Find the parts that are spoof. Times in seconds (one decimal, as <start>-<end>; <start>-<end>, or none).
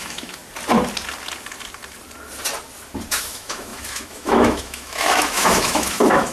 0.0-0.4; 3.1-6.3